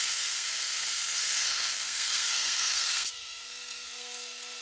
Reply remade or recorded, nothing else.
remade